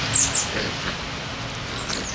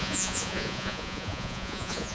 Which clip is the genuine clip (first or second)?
first